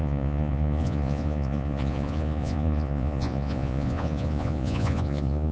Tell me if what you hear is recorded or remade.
remade